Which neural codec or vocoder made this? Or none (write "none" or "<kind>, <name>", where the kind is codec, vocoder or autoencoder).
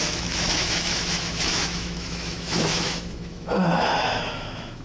autoencoder, DAC-VAE